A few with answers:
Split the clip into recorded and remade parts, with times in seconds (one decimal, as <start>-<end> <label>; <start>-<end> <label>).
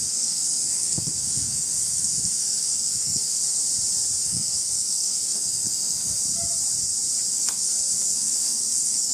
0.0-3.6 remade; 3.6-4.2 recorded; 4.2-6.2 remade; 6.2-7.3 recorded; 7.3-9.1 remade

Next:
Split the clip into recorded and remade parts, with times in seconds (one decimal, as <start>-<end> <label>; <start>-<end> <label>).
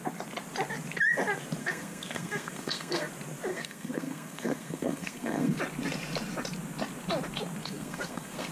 0.0-1.6 recorded; 1.6-3.1 remade; 3.1-3.5 recorded; 3.5-5.6 remade; 5.6-7.6 recorded; 7.6-8.5 remade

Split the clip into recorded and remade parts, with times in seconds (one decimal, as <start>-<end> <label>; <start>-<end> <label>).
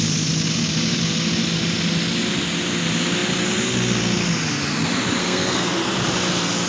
0.0-5.2 recorded; 5.2-5.7 remade; 5.7-6.7 recorded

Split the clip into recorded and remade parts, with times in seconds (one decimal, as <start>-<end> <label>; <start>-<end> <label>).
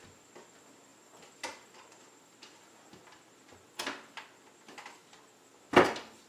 0.0-6.3 recorded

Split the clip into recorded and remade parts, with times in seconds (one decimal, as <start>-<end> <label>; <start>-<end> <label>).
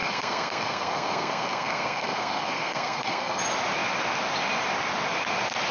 0.0-3.4 remade; 3.4-5.7 recorded